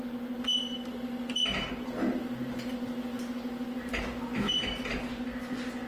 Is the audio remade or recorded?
recorded